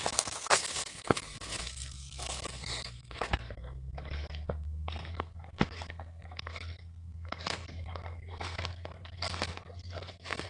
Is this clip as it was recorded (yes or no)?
no